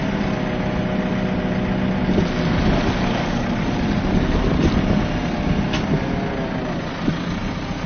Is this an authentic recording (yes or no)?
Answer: yes